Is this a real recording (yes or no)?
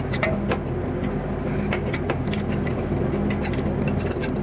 yes